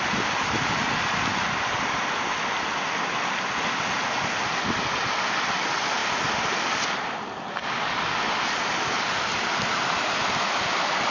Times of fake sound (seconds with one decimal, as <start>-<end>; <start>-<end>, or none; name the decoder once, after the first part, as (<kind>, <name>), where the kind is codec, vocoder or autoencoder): none